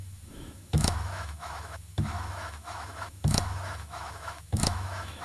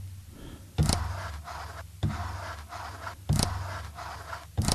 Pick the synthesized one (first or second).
first